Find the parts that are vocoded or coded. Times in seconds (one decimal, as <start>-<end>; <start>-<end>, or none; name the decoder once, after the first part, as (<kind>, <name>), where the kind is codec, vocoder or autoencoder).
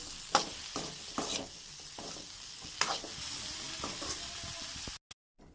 none